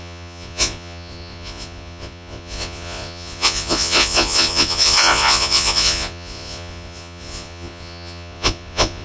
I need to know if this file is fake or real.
fake